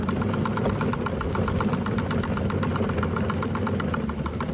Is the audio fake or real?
real